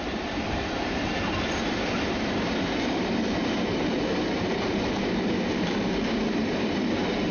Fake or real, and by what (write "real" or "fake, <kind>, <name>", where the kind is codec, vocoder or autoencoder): fake, vocoder, BigVGAN v2